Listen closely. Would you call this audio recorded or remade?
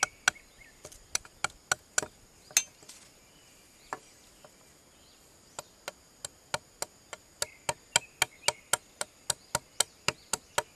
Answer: recorded